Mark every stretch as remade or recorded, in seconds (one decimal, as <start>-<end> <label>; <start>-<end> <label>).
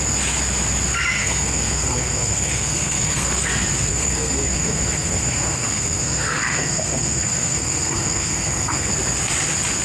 0.0-1.2 recorded; 1.2-3.4 remade; 3.4-3.9 recorded; 3.9-8.9 remade; 8.9-9.8 recorded